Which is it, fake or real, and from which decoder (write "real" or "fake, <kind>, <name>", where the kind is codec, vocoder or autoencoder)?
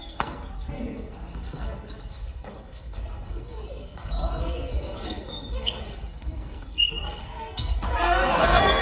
fake, codec, SNAC